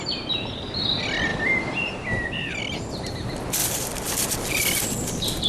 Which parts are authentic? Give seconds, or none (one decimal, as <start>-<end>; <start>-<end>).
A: 0.0-1.3; 2.6-3.6; 4.1-5.5